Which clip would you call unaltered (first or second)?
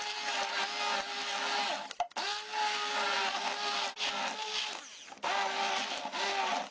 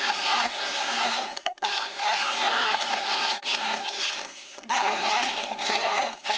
first